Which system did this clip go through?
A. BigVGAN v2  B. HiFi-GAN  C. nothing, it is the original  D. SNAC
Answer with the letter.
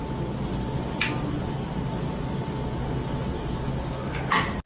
C